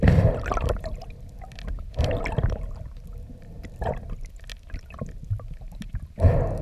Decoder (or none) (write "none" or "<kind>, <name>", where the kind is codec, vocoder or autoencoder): vocoder, BigVGAN v2